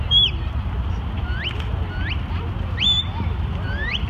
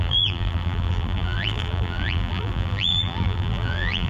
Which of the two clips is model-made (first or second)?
second